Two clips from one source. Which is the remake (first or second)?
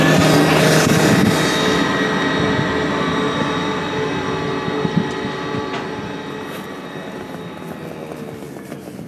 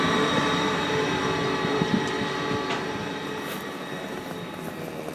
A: second